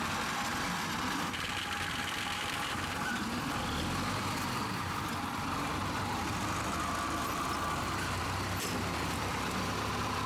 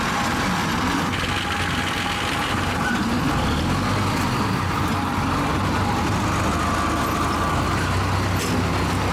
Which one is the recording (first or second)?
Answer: second